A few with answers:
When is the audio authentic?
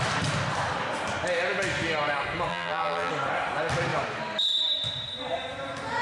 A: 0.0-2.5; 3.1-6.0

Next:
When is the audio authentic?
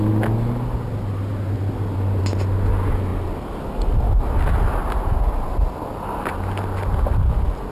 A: 0.0-7.7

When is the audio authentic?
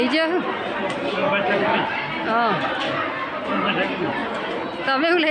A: 0.0-5.3